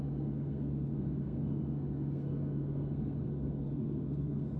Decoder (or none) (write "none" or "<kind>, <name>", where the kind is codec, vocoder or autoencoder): codec, SNAC